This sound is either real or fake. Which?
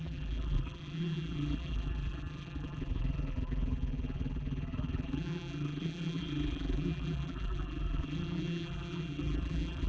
fake